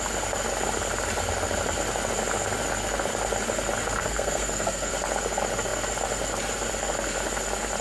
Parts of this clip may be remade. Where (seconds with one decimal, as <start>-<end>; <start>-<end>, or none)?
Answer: 4.0-4.9